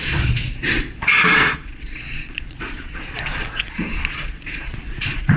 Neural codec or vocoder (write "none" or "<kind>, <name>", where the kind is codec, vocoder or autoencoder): vocoder, Vocos